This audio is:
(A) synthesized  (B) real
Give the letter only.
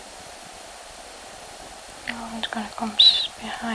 B